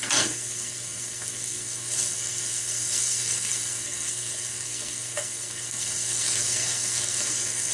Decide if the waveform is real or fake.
fake